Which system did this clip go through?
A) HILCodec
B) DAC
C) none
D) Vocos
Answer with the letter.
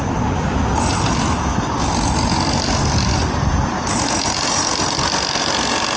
C